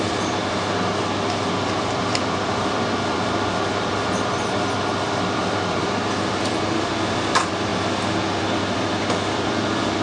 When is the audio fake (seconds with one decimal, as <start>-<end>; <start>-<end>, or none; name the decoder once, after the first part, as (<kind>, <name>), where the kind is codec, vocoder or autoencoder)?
0.0-7.7 (vocoder, BigVGAN v2); 8.4-10.0